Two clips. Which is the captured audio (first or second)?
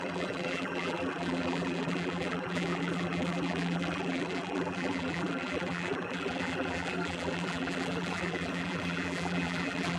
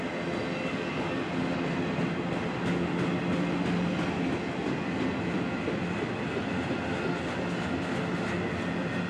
second